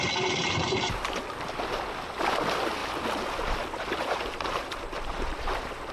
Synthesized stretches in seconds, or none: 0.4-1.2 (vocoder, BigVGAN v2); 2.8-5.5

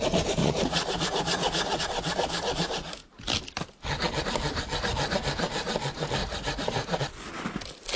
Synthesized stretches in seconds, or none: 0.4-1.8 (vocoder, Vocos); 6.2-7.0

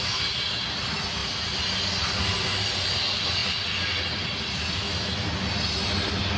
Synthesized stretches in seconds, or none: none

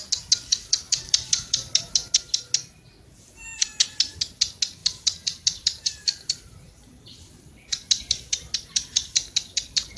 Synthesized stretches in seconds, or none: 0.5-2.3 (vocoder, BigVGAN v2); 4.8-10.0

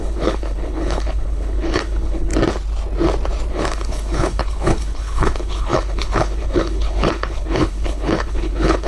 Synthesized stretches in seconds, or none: 0.0-2.3 (codec, HILCodec); 3.5-8.9

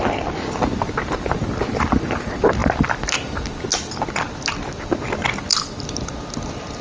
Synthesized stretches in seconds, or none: none

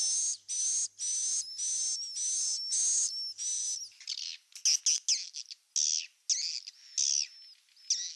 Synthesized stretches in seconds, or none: none

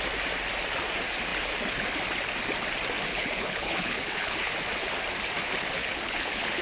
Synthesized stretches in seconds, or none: 3.1-4.5 (codec, HILCodec); 5.8-6.6